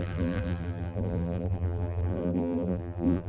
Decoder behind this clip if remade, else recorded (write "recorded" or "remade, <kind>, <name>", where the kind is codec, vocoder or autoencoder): remade, vocoder, BigVGAN v2